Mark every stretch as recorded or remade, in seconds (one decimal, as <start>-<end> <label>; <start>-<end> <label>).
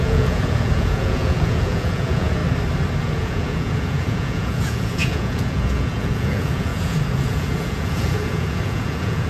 0.0-2.4 remade; 2.4-3.0 recorded; 3.0-9.3 remade